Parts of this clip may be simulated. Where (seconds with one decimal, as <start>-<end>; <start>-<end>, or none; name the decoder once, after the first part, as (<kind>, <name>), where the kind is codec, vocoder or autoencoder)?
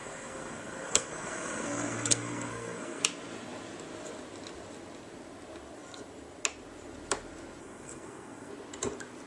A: 0.0-3.0 (codec, SNAC); 7.6-8.5